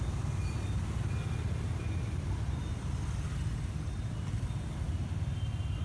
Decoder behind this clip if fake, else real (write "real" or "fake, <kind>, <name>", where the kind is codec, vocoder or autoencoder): real